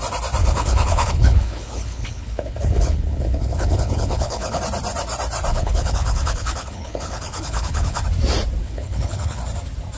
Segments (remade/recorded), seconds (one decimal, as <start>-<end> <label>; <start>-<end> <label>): 0.0-0.4 recorded; 0.4-4.6 remade; 4.6-5.5 recorded; 5.5-8.0 remade; 8.0-8.6 recorded; 8.6-9.4 remade; 9.4-10.0 recorded